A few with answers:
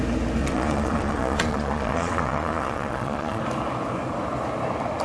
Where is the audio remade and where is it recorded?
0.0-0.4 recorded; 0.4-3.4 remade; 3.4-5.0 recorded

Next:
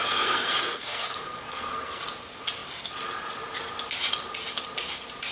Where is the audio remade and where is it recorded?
0.0-2.0 remade; 2.0-5.3 recorded